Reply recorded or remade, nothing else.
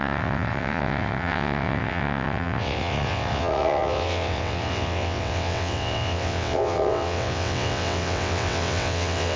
remade